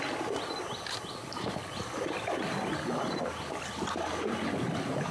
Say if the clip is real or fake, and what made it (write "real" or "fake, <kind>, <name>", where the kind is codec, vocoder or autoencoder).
real